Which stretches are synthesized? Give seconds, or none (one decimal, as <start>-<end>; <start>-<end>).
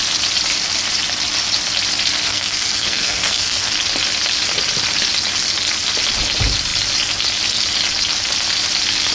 2.3-3.7